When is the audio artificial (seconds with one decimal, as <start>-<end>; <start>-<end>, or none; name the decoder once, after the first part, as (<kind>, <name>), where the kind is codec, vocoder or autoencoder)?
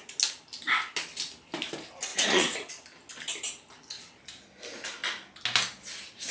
2.1-2.7 (vocoder, Vocos)